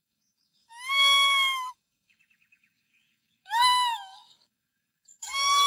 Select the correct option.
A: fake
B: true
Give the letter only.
A